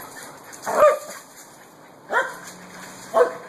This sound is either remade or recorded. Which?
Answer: recorded